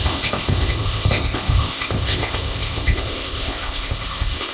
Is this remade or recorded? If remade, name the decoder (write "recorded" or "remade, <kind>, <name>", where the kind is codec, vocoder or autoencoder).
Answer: remade, codec, ZipCodec